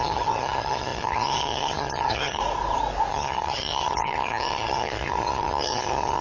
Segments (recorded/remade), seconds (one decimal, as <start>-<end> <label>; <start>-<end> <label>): 0.0-2.4 remade; 2.4-3.1 recorded; 3.1-6.2 remade